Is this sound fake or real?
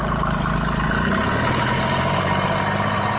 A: fake